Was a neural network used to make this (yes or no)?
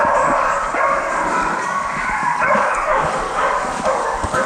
yes